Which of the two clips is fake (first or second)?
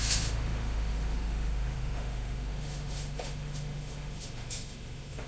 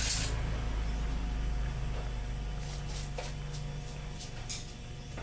first